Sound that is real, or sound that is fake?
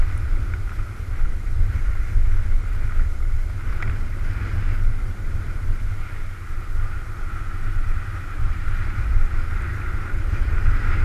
real